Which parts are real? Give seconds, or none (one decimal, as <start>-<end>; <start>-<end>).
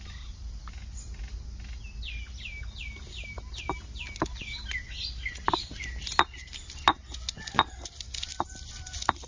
0.4-5.6; 7.0-7.9